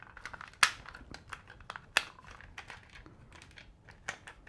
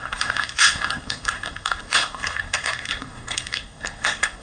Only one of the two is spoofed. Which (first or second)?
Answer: second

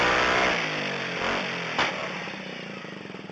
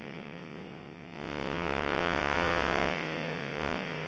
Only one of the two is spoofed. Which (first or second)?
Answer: second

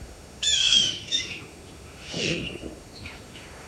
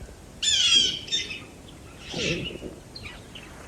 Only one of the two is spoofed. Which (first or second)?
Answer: first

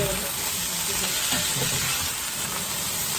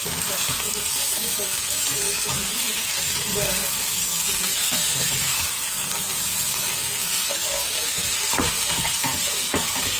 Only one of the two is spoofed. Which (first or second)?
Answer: second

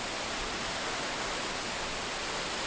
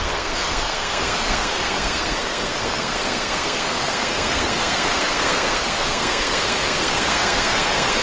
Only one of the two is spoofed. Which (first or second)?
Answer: second